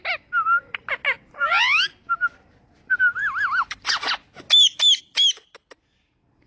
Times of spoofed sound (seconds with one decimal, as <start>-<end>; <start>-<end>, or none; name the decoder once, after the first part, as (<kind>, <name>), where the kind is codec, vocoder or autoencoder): none